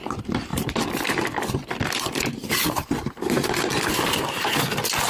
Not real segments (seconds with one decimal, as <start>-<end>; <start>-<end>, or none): 0.5-3.6